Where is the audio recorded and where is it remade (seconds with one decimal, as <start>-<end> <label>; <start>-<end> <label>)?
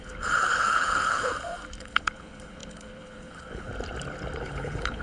0.0-1.3 remade; 1.3-1.8 recorded; 1.8-3.7 remade; 3.7-4.4 recorded; 4.4-5.0 remade